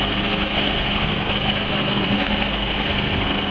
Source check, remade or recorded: remade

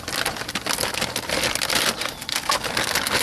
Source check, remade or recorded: recorded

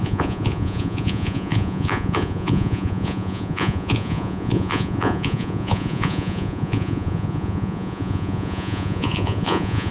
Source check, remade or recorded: remade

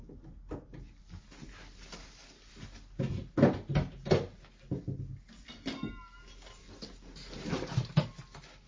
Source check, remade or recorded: recorded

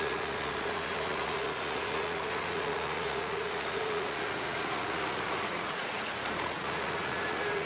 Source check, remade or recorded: remade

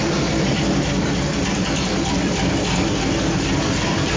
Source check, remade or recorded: remade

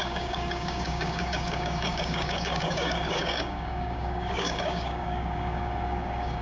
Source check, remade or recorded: remade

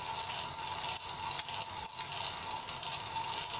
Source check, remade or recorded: recorded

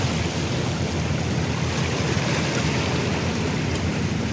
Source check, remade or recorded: recorded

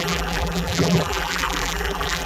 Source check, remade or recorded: remade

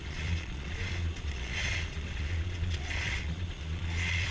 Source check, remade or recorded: remade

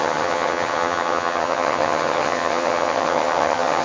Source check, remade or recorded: remade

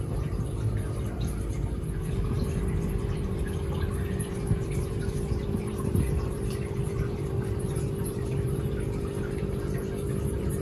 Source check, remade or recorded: remade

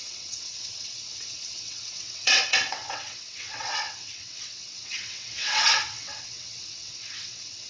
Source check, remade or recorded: remade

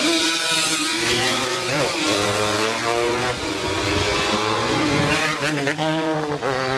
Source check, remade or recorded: remade